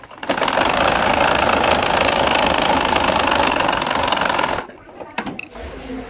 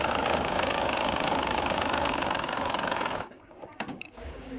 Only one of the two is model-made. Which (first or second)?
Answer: second